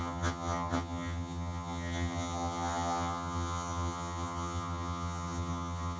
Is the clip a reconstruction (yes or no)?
yes